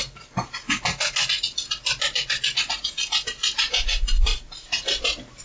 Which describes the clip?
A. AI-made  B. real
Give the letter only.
B